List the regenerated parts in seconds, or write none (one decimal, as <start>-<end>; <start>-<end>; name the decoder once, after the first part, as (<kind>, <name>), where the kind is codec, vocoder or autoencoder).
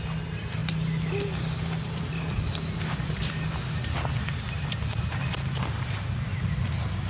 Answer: none